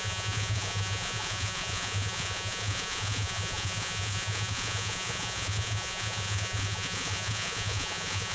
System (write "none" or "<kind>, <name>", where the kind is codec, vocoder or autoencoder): vocoder, Vocos